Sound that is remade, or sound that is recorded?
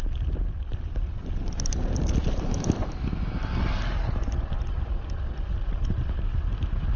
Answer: recorded